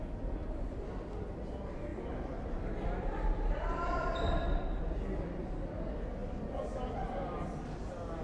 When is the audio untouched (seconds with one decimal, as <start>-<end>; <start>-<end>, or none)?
0.0-1.9; 4.8-6.2; 7.6-8.2